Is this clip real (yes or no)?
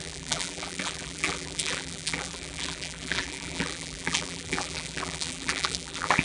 no